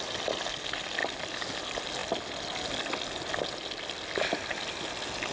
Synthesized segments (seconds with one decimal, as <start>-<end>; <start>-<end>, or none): none